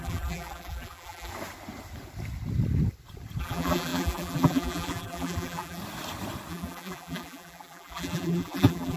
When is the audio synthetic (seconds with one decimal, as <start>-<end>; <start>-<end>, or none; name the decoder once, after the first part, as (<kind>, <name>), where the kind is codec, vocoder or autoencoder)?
0.0-1.3 (vocoder, BigVGAN v2); 3.4-5.8; 6.5-9.0